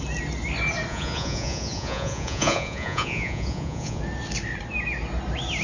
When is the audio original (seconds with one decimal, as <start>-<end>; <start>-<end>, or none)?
0.0-0.9; 4.0-5.6